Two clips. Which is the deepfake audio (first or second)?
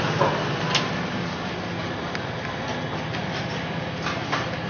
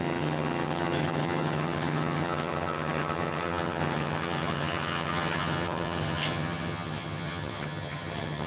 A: second